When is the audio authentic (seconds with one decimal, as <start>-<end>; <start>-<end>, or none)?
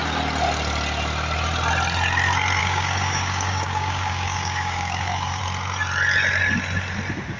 0.0-2.6; 5.4-7.4